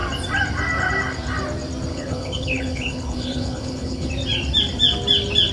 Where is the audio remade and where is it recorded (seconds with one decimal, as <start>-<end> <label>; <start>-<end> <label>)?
0.0-1.9 recorded; 1.9-4.1 remade; 4.1-5.5 recorded